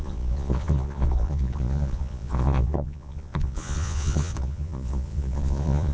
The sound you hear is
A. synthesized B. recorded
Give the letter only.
A